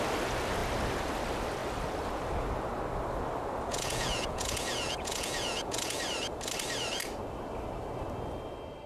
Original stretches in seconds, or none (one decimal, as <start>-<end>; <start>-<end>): 0.0-3.7; 6.0-8.9